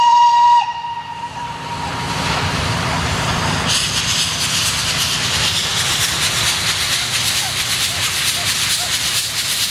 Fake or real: fake